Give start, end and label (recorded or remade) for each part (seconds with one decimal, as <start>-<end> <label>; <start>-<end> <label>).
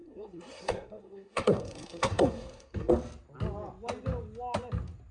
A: 0.0-2.9 remade; 2.9-5.1 recorded